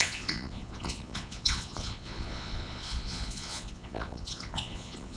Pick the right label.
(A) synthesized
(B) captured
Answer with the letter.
A